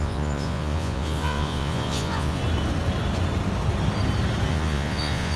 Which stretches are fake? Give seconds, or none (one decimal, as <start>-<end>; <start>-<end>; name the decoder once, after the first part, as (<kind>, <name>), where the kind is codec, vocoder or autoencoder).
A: 0.0-2.4 (vocoder, Vocos); 4.5-5.4